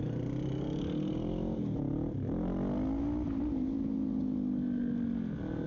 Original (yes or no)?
yes